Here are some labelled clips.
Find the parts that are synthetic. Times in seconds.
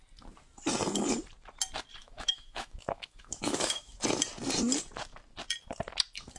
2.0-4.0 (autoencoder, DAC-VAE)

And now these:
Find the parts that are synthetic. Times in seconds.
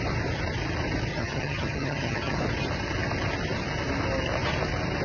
1.1-2.4 (vocoder, HiFi-GAN)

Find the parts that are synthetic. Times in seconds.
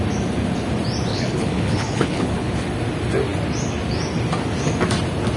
1.1-2.5 (codec, HILCodec)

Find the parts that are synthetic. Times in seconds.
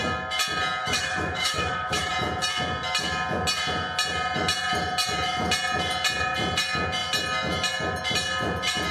0.8-2.1 (autoencoder, DAC-VAE)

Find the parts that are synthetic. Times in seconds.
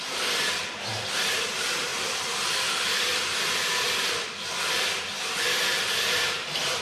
none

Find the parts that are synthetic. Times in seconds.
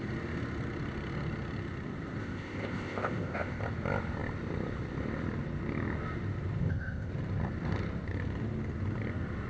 2.2-3.6 (codec, ZipCodec); 6.6-7.1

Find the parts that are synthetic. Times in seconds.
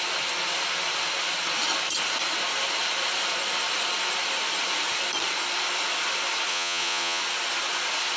6.5-7.2 (vocoder, Vocos)